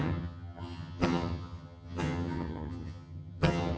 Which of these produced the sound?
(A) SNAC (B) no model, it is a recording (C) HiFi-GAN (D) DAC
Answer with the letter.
C